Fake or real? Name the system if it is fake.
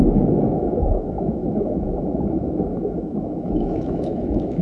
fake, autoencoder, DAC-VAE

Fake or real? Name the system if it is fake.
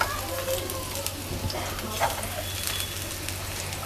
real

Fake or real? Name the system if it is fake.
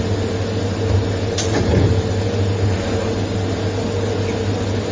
real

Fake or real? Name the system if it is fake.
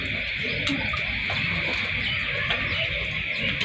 real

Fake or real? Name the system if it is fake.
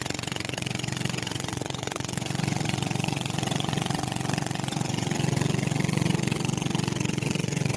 fake, vocoder, WaveNeXt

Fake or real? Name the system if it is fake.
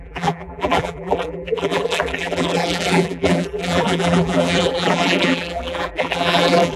fake, vocoder, BigVGAN v2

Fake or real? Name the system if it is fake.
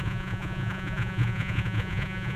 fake, vocoder, Vocos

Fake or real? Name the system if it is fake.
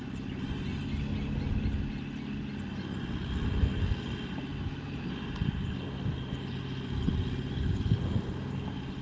real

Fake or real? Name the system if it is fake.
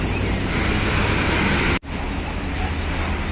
real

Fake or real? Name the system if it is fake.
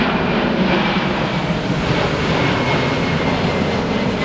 real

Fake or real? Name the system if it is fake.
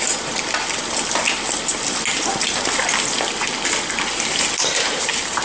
real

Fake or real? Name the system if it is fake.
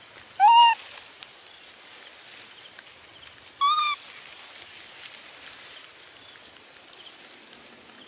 real